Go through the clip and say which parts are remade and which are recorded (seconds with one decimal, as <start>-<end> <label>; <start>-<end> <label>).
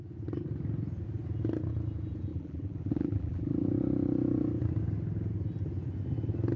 0.0-2.3 recorded; 2.3-3.7 remade; 3.7-6.6 recorded